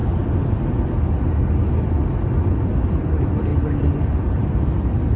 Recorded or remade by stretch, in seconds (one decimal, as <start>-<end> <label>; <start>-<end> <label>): 0.0-5.2 recorded